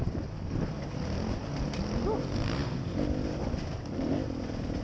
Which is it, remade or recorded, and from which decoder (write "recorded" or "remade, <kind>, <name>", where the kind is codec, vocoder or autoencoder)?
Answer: recorded